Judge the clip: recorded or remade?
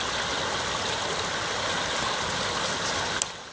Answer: recorded